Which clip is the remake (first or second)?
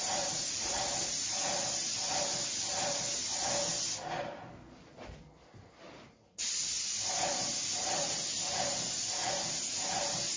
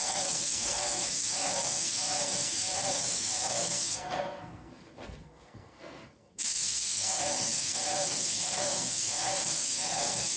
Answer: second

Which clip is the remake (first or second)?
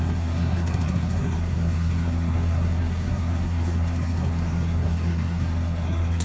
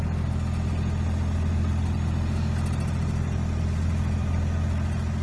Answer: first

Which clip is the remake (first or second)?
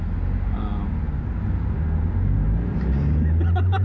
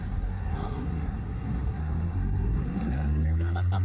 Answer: second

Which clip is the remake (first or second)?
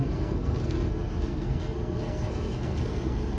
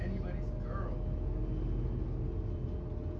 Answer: first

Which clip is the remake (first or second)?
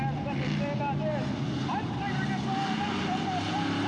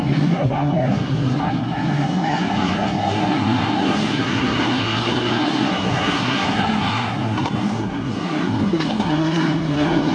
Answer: second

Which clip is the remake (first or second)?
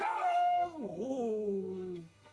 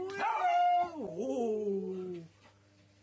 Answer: first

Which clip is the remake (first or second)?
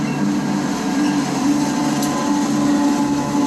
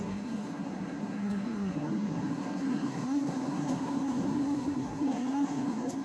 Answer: second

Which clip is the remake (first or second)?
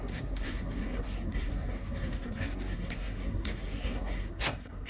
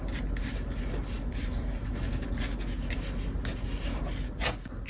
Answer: first